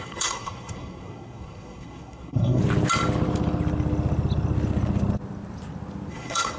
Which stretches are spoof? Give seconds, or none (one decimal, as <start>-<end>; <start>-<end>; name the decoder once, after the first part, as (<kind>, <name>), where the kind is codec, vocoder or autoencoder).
0.0-2.6 (codec, SNAC); 6.1-6.6